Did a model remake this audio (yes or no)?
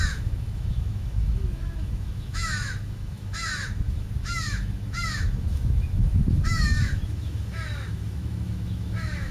yes